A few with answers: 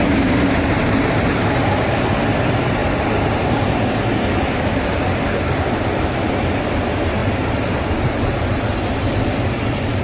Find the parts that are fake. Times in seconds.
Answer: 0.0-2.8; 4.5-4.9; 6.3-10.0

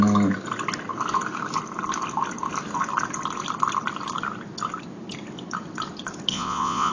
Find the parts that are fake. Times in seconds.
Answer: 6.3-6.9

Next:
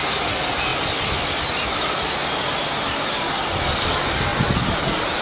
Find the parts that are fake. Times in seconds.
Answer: none